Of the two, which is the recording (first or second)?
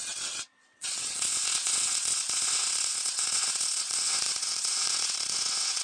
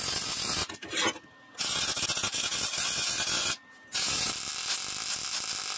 second